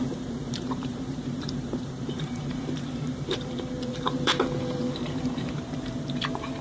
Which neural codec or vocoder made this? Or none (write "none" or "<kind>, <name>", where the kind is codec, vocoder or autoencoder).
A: vocoder, BigVGAN v2